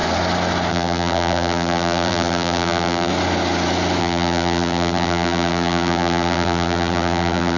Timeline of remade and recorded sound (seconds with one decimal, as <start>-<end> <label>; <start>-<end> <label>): 0.0-0.7 recorded; 0.7-3.1 remade; 3.1-4.0 recorded; 4.0-7.6 remade